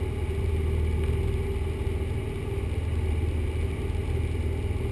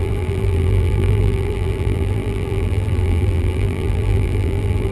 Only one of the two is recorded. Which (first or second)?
first